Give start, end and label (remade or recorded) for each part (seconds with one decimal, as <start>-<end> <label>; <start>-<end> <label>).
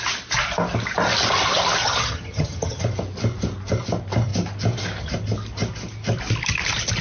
0.0-1.8 recorded; 1.8-2.8 remade; 2.8-7.0 recorded